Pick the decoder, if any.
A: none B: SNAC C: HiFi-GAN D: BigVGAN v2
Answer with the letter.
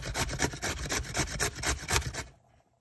A